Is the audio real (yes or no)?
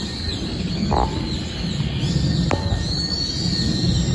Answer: yes